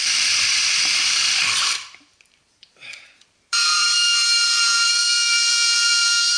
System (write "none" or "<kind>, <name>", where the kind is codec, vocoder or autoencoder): vocoder, BigVGAN v2